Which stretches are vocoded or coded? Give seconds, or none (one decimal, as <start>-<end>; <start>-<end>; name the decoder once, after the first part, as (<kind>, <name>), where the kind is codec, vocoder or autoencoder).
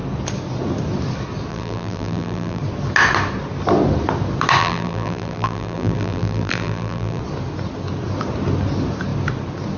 1.5-2.6 (vocoder, BigVGAN v2); 4.6-7.2